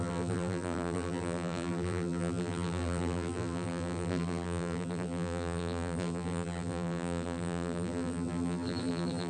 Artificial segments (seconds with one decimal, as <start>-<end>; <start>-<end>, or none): 0.0-9.3